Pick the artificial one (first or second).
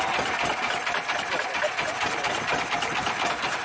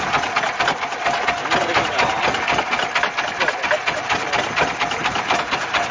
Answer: first